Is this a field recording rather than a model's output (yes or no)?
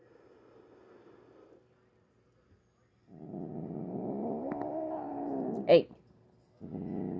yes